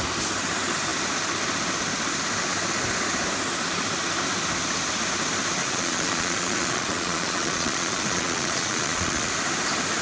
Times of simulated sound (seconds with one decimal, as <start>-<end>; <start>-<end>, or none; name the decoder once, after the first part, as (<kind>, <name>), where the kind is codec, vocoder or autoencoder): 5.6-9.3 (vocoder, Vocos)